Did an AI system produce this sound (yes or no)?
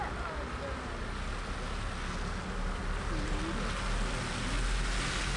no